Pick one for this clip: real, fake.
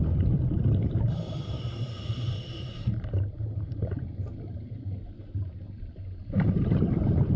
fake